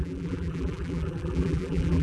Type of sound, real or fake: fake